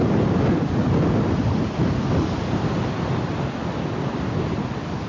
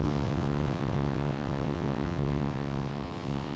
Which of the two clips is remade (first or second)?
second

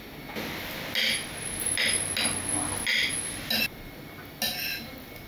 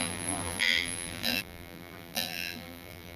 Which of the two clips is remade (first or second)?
second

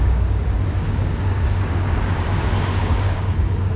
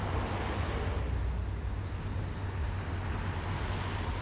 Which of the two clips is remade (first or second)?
first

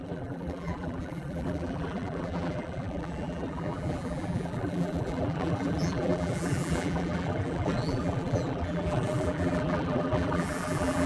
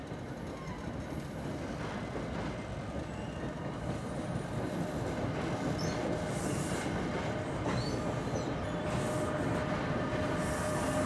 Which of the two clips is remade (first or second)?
first